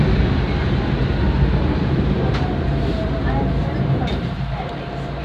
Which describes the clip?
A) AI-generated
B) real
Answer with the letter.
A